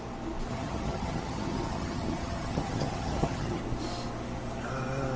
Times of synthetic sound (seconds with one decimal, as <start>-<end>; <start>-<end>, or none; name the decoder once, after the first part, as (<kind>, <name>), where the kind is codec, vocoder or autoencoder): 0.5-3.6 (vocoder, HiFi-GAN)